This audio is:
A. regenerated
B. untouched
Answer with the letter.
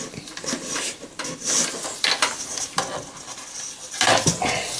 B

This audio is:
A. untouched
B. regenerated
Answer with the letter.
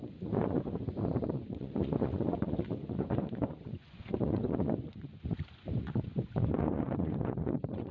B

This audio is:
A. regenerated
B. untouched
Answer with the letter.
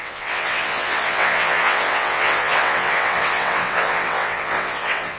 A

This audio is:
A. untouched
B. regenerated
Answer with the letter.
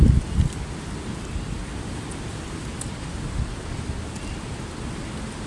A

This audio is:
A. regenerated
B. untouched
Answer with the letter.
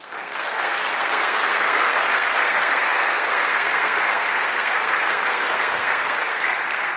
A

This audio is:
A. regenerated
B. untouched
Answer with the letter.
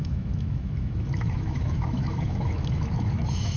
A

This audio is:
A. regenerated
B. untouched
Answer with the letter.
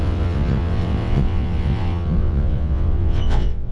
A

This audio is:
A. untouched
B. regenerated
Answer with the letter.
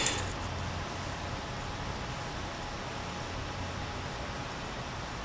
A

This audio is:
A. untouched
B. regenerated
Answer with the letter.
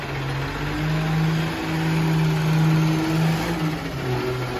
A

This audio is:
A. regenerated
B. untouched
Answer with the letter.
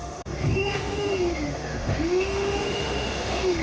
A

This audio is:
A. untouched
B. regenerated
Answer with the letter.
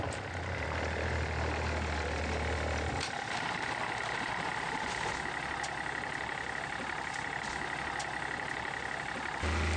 A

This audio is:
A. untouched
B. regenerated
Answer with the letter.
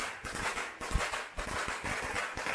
A